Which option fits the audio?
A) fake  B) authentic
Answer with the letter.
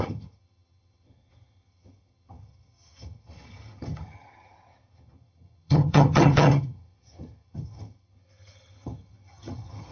A